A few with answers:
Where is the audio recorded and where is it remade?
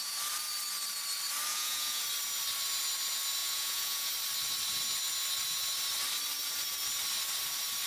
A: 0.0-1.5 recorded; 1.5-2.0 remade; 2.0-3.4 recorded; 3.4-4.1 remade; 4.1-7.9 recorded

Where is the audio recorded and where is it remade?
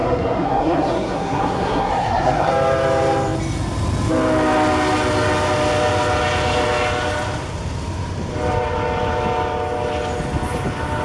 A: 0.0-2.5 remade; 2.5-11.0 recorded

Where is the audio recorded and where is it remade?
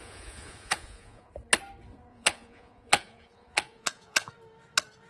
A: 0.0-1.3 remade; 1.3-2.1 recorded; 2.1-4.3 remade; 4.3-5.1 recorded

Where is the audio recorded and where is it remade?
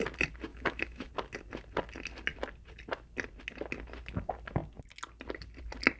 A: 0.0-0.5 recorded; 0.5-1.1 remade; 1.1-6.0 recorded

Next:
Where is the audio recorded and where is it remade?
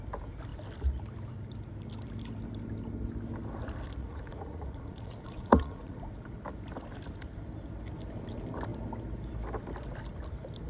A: 0.0-4.0 recorded; 4.0-6.1 remade; 6.1-10.7 recorded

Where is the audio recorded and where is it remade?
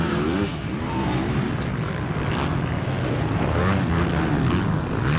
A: 0.0-5.2 recorded